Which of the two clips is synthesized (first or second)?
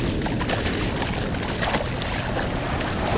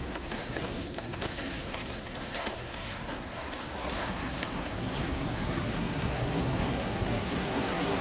second